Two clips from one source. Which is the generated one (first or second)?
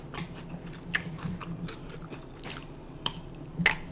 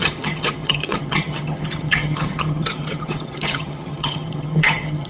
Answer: second